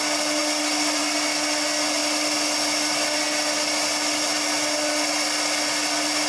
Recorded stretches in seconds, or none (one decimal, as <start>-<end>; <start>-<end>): 0.0-6.3